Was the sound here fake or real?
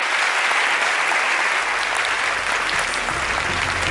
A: real